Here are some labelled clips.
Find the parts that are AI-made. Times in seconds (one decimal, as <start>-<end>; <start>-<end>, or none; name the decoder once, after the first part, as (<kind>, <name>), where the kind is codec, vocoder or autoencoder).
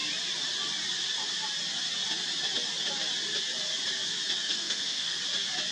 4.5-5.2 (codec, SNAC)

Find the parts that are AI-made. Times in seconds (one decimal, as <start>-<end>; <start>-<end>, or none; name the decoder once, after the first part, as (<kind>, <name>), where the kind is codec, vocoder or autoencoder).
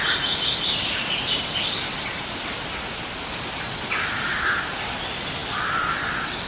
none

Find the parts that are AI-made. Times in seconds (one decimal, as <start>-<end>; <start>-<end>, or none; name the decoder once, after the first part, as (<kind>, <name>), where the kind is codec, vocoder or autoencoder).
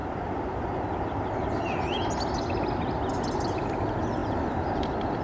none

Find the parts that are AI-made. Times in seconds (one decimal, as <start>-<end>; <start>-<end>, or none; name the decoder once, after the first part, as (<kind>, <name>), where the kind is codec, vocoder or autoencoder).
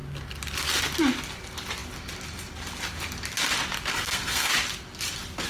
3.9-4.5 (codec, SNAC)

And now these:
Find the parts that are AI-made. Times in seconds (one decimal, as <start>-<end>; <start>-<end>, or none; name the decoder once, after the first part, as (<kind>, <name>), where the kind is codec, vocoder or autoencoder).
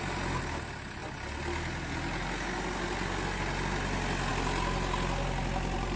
none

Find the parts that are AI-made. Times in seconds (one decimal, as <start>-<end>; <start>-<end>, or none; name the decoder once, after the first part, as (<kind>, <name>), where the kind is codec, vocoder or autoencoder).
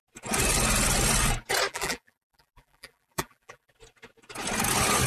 1.7-3.7 (vocoder, BigVGAN v2)